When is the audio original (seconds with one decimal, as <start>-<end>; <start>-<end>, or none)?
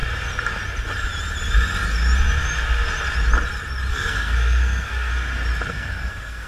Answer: 0.0-3.9; 5.1-5.7